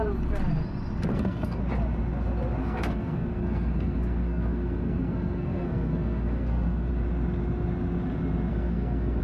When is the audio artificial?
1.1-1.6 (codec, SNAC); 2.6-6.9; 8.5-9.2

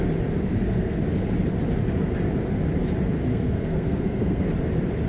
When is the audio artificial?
0.5-1.0 (codec, SNAC); 3.3-4.5

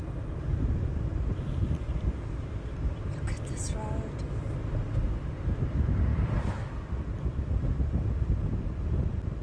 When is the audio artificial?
none

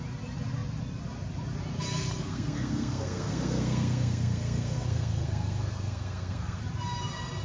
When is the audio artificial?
2.2-6.6 (codec, SNAC)

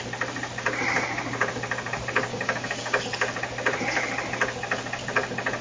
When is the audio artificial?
2.3-3.0 (codec, DAC)